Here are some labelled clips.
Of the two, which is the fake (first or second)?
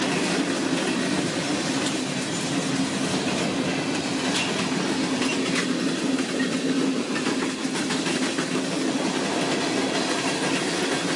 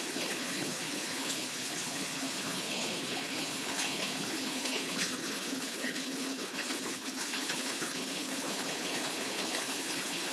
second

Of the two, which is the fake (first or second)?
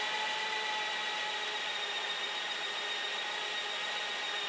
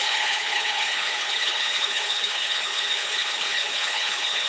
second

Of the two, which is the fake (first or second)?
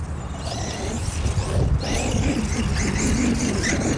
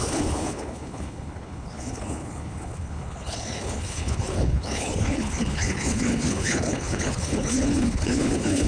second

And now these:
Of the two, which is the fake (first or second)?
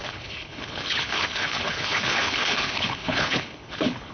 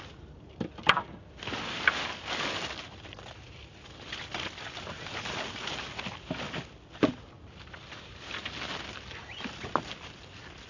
first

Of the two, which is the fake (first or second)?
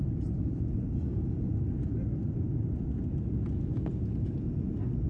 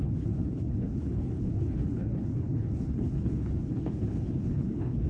second